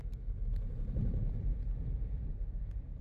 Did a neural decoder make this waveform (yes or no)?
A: yes